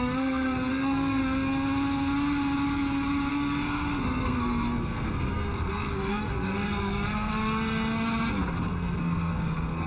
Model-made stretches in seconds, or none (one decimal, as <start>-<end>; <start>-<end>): 0.0-1.2; 3.3-7.3; 8.7-9.9